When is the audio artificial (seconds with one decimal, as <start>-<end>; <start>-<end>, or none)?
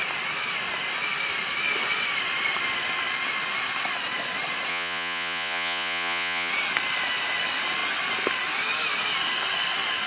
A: 4.7-6.5